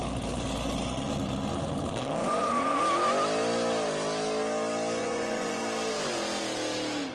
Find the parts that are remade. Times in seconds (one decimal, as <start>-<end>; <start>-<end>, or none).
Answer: 2.2-2.8; 5.0-5.6